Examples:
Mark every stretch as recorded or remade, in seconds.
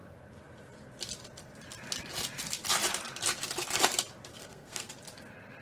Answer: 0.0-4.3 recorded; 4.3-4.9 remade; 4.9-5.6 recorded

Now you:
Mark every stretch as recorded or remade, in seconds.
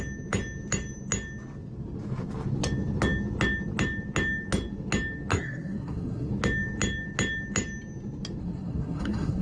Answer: 0.0-5.3 recorded; 5.3-6.3 remade; 6.3-8.4 recorded; 8.4-9.4 remade